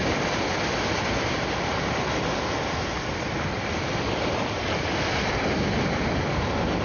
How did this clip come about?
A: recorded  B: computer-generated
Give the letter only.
A